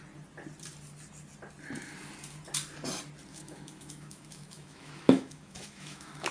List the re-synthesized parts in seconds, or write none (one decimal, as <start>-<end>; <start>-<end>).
3.3-6.3